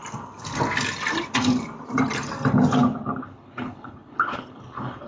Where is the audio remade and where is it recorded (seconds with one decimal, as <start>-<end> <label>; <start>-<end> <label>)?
0.0-3.2 recorded; 3.2-5.1 remade